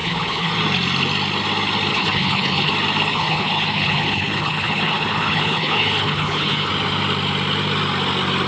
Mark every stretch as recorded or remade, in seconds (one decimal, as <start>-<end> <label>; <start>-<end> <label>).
0.0-0.5 remade; 0.5-1.9 recorded; 1.9-2.7 remade; 2.7-3.1 recorded; 3.1-6.7 remade; 6.7-8.5 recorded